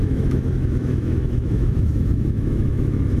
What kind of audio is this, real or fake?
fake